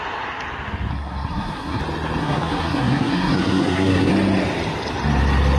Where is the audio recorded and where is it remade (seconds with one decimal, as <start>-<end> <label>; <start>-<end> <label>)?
0.0-0.9 recorded; 0.9-1.8 remade; 1.8-2.2 recorded; 2.2-4.1 remade; 4.1-5.6 recorded